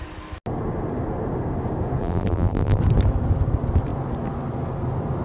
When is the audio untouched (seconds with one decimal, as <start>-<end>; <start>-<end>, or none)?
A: 0.0-2.0; 2.8-5.2